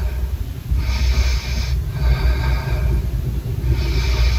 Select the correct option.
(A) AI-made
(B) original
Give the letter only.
B